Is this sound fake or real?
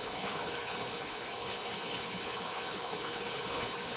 fake